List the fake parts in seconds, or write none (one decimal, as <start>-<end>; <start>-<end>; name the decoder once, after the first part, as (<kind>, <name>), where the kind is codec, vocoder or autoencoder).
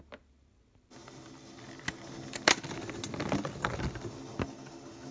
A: none